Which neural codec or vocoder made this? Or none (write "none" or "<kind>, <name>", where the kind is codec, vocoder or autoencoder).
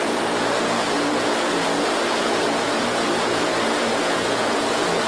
vocoder, Vocos